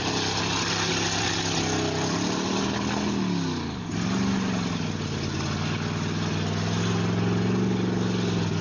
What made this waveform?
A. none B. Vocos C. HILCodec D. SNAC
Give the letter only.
A